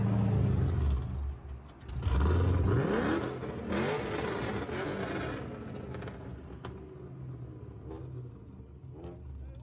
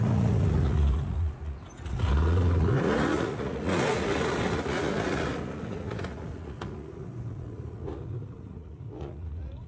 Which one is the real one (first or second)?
first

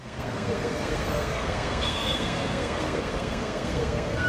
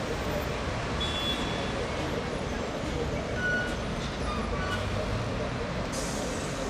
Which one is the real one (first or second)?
second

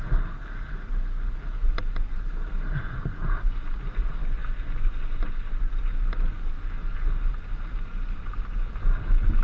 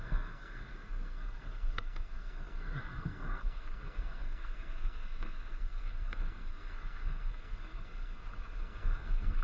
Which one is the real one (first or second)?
first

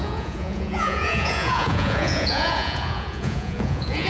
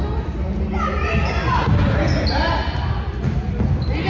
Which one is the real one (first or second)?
second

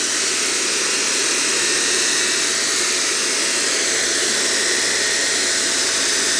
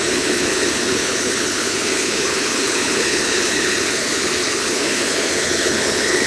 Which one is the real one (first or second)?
first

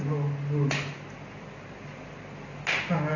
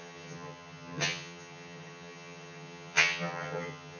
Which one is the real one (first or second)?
first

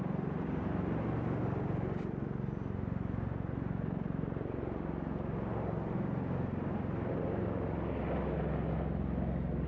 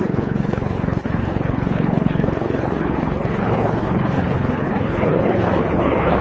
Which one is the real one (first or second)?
first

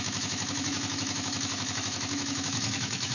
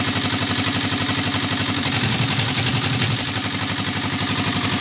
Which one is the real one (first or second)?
second